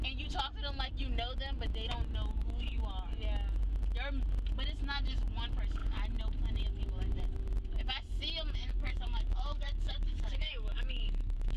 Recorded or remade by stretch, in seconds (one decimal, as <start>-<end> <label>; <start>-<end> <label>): 0.0-2.3 recorded; 2.3-2.8 remade; 2.8-8.6 recorded; 8.6-11.6 remade